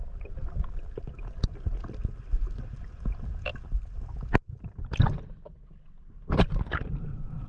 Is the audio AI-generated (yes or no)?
no